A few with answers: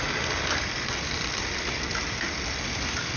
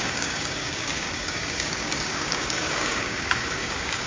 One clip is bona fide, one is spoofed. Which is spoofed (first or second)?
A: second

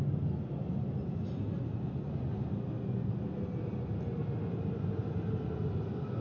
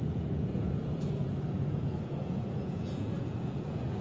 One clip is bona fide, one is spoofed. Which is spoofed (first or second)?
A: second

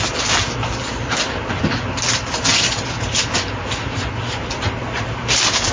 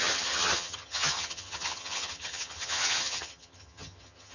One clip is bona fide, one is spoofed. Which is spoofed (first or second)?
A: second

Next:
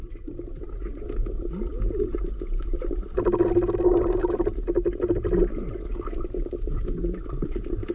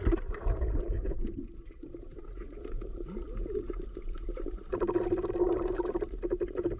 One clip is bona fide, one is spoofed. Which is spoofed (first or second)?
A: second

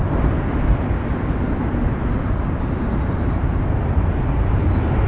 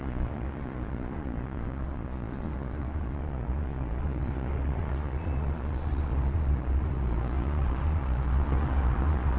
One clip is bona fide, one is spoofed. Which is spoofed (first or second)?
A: second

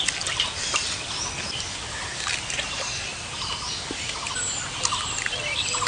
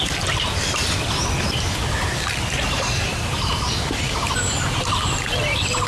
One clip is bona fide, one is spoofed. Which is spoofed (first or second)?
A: second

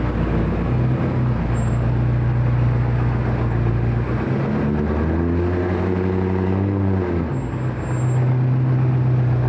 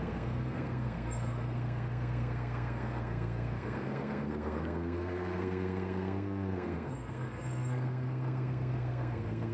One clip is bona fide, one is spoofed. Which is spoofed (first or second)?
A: second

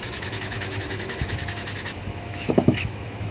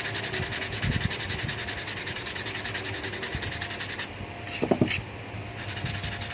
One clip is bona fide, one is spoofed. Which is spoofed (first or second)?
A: first